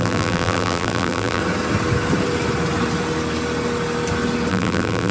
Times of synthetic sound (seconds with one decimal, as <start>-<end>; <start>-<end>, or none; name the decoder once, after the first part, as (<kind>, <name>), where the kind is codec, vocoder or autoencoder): 0.0-1.4 (vocoder, BigVGAN v2); 4.5-5.1